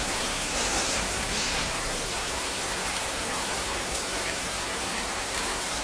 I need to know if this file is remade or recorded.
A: remade